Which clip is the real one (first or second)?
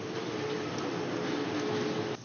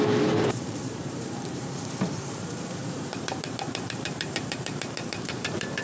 first